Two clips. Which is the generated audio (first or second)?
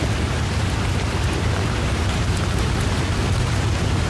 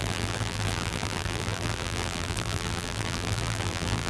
second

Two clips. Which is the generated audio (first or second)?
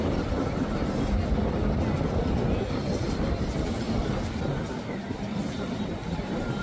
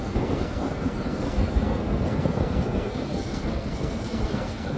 second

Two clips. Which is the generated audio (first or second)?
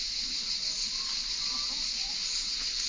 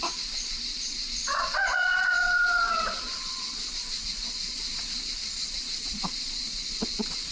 second